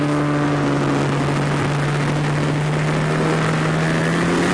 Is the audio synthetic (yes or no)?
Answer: no